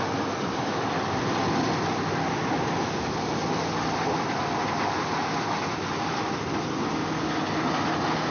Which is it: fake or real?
real